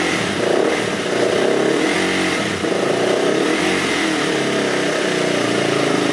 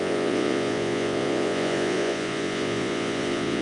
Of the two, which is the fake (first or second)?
second